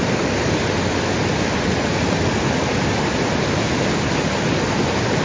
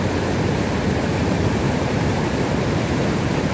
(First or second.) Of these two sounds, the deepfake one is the second